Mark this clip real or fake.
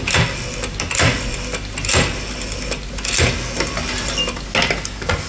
real